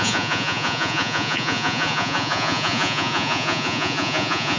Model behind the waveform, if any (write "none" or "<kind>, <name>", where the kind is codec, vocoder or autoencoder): vocoder, Vocos